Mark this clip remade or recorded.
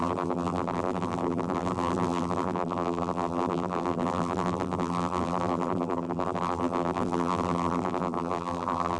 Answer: remade